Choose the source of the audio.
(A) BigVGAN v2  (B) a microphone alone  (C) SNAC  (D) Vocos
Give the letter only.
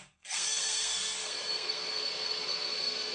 C